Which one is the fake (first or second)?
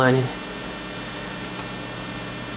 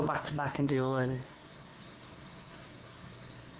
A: second